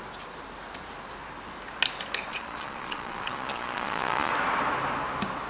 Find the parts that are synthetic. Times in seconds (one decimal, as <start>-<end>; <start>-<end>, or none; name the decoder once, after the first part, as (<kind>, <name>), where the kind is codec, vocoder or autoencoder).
2.3-4.3 (vocoder, Vocos)

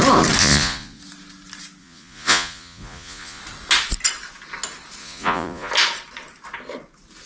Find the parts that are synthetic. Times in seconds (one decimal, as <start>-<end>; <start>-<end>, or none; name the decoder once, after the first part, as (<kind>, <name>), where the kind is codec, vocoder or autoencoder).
0.4-1.0 (vocoder, Vocos); 1.8-3.4; 5.0-5.7

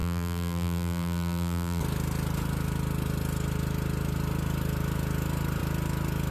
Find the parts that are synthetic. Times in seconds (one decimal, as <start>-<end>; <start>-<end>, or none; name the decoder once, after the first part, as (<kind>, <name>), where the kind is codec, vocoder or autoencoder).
0.0-1.8 (vocoder, BigVGAN v2)

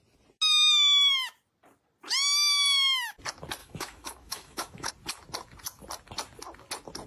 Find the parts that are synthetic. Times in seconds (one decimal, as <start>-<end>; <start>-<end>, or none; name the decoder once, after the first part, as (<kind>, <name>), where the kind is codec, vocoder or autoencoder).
3.6-4.9 (autoencoder, DAC-VAE)

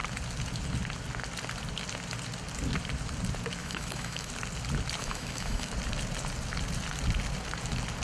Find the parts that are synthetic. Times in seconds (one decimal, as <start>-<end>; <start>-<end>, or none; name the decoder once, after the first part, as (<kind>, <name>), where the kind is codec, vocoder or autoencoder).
3.6-4.3 (autoencoder, DAC-VAE); 5.0-5.7

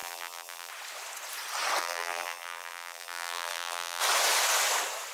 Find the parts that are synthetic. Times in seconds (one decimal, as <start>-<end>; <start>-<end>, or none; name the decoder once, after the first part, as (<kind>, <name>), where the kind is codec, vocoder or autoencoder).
0.0-0.7 (vocoder, BigVGAN v2); 1.8-4.0

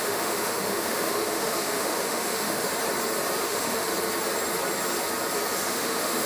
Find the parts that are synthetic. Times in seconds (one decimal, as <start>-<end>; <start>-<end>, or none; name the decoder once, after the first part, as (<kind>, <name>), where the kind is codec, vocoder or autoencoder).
0.0-2.7 (autoencoder, DAC-VAE); 3.4-3.9; 5.7-6.3